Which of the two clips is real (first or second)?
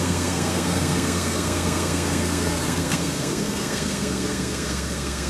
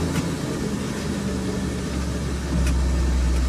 second